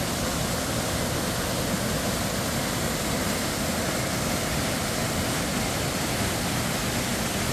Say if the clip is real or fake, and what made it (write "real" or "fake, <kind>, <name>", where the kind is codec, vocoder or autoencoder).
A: real